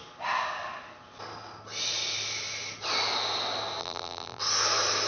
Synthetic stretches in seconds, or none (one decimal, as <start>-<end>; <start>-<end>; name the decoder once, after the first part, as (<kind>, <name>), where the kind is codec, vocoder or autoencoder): 3.8-4.4 (vocoder, BigVGAN v2)